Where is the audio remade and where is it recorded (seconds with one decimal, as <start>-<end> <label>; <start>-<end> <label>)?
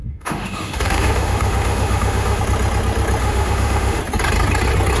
0.0-2.4 remade; 2.4-3.2 recorded; 3.2-4.0 remade; 4.0-5.0 recorded